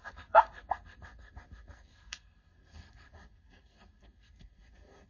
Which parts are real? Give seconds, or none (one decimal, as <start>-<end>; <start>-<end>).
none